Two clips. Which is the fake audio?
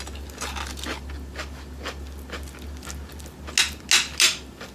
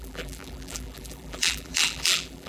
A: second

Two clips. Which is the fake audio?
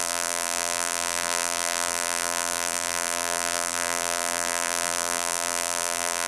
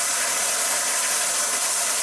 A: first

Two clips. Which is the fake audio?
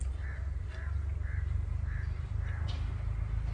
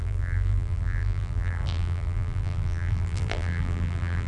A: second